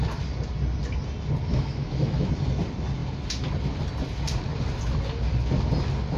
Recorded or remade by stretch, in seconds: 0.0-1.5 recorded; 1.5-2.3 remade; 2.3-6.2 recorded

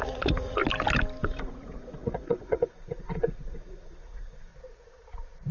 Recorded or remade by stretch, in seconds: 0.0-0.6 remade; 0.6-1.2 recorded; 1.2-4.5 remade; 4.5-5.5 recorded